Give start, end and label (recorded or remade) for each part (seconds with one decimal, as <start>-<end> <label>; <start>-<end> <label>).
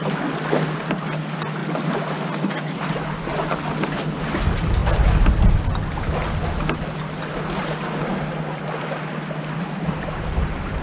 0.0-10.8 recorded